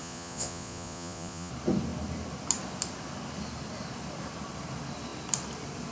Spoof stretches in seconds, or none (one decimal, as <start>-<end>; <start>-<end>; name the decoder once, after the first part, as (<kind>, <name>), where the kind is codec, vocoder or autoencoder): 0.0-1.5 (vocoder, Vocos)